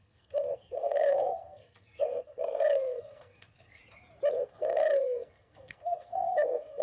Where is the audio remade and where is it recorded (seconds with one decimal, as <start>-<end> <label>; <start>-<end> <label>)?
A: 0.0-3.8 remade; 3.8-4.3 recorded; 4.3-6.8 remade